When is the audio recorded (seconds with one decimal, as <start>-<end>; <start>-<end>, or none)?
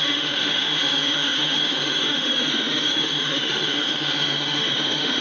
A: none